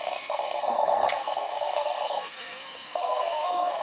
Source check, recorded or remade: remade